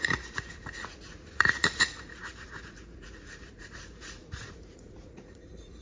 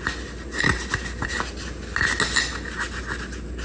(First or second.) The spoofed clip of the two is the first